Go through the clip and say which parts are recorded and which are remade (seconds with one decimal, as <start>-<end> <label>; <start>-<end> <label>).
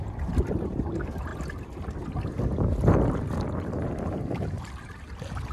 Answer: 0.0-5.5 recorded